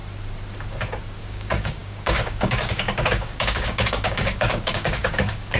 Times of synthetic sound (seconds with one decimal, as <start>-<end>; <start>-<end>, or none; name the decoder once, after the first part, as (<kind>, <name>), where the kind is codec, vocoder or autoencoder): 1.2-5.6 (codec, DAC)